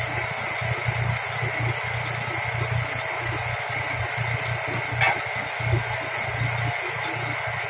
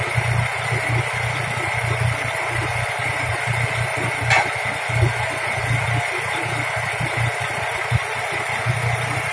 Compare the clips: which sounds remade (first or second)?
second